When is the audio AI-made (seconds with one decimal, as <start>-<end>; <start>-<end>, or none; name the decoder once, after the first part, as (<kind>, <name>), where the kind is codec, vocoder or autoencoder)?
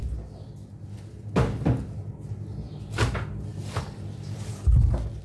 none